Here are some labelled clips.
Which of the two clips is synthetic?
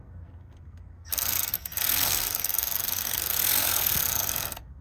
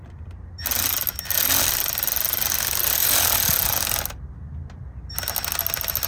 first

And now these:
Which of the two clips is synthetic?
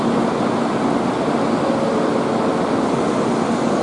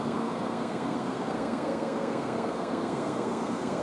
second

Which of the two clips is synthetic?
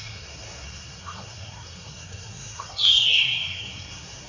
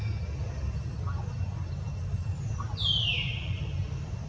first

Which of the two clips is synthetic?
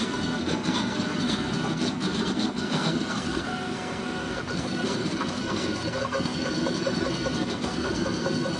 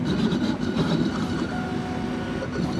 first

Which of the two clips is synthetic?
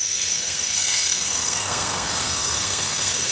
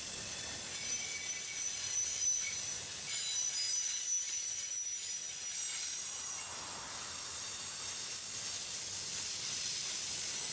first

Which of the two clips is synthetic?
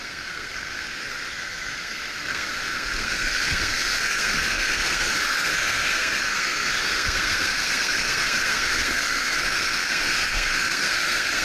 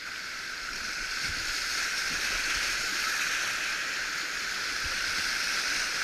first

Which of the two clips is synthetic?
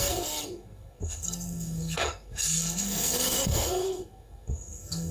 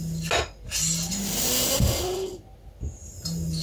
first